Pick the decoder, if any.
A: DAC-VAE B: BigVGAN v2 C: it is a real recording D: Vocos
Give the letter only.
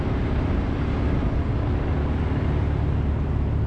C